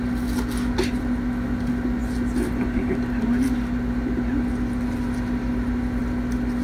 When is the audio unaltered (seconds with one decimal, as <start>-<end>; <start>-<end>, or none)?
0.0-6.6